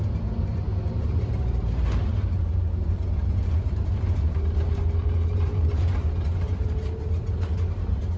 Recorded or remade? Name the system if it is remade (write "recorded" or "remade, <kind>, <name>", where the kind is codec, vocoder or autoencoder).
remade, vocoder, BigVGAN v2